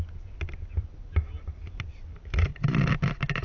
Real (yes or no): yes